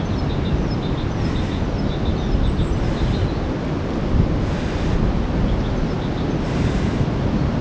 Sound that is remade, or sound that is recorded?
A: recorded